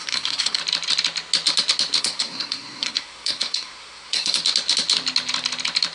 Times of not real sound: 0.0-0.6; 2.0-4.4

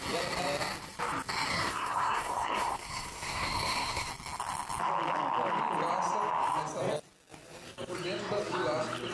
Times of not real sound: 1.5-4.1